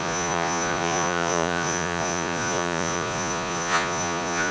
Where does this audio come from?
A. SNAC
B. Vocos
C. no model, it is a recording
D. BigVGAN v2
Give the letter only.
B